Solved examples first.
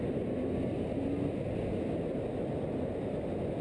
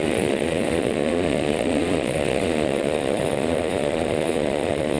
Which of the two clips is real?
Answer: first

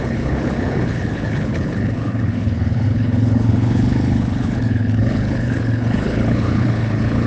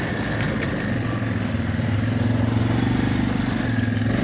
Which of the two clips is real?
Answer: second